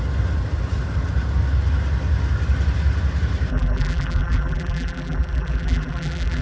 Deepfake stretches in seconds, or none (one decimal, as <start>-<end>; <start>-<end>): 3.5-6.4